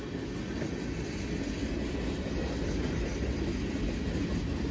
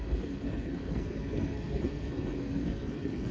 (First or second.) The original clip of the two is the first